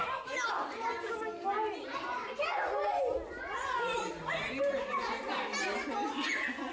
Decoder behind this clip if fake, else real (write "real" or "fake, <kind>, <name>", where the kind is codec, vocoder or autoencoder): real